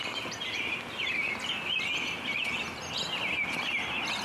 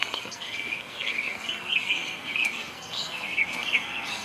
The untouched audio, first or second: first